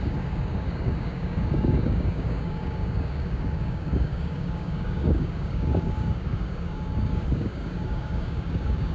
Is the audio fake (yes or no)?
yes